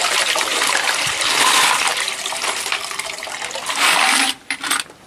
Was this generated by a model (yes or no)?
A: yes